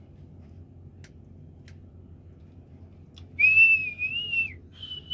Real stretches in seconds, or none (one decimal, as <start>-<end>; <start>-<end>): 0.0-5.1